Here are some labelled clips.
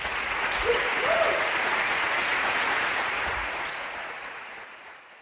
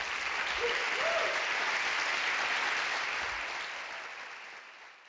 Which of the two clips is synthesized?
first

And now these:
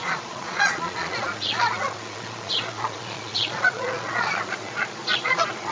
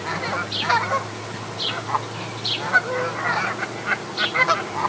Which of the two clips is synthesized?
first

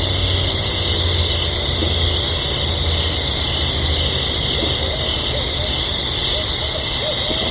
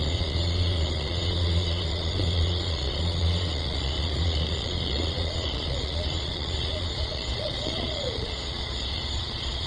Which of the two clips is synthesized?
second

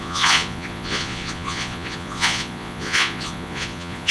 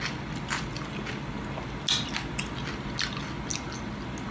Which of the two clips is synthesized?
first